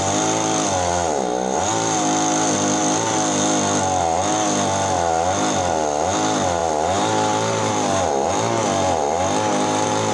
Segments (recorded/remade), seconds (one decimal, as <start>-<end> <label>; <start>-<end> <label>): 0.0-10.1 recorded